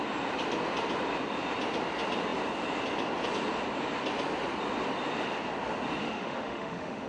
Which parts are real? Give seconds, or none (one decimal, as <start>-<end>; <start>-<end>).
0.0-6.0